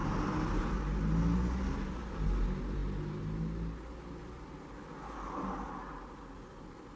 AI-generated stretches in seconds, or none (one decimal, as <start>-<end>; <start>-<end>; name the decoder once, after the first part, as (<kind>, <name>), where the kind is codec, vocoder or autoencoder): none